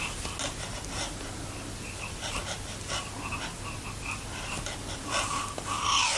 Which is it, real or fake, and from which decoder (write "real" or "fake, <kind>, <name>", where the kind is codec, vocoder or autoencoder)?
real